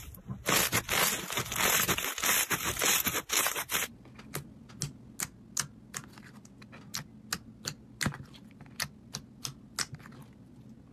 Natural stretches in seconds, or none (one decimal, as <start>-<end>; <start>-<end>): 0.0-10.9